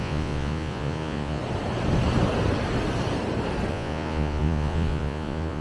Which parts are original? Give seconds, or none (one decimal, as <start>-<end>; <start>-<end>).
1.4-3.7